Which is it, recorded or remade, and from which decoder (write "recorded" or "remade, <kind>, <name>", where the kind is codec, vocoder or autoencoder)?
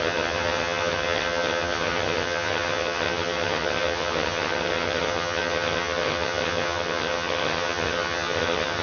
remade, vocoder, HiFi-GAN